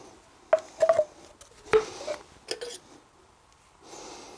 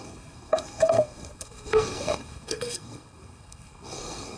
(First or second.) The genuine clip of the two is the first